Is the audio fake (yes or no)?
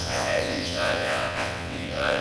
yes